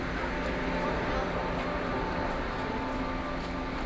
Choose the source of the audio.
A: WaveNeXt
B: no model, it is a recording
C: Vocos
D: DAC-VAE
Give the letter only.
B